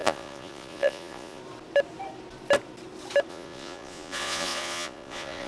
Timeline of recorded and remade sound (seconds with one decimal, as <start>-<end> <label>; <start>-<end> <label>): 0.0-1.4 remade; 1.4-3.3 recorded; 3.3-5.5 remade